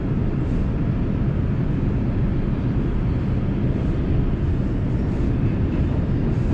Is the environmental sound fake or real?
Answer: real